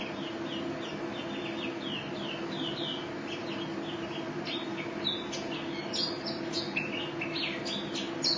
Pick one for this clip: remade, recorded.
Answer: recorded